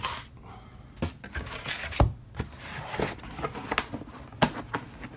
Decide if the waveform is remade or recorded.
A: recorded